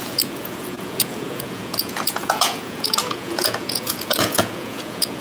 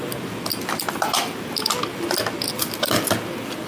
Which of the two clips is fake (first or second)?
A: first